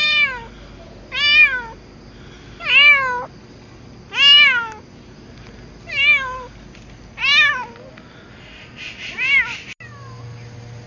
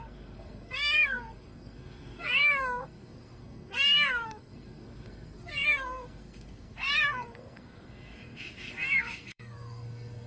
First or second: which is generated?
second